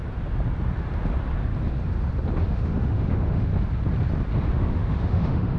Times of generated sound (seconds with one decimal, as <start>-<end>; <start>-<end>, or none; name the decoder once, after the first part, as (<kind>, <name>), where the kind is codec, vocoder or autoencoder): 2.4-3.5 (autoencoder, DAC-VAE); 4.5-5.6